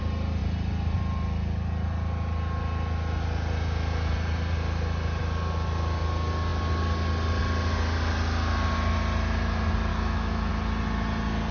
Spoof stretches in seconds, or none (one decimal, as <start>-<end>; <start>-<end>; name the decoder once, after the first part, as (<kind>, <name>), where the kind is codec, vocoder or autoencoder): 9.9-10.5 (autoencoder, DAC-VAE)